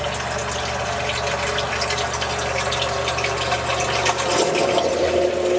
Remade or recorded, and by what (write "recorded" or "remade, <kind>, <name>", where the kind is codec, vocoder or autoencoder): recorded